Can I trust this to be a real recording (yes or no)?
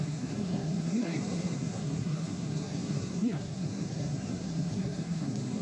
no